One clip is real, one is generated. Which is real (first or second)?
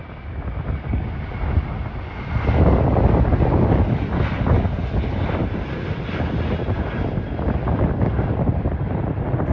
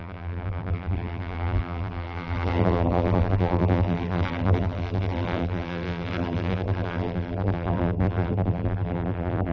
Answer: first